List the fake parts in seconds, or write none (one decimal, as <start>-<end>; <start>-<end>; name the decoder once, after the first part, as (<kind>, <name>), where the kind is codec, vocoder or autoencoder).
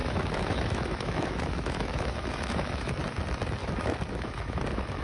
0.0-3.0 (autoencoder, DAC-VAE); 3.6-5.0